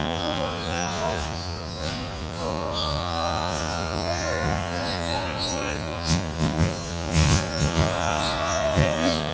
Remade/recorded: remade